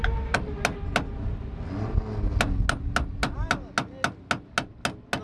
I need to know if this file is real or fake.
real